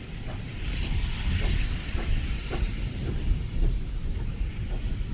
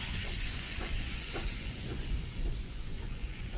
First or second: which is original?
first